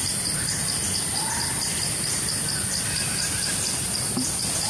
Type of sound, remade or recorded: recorded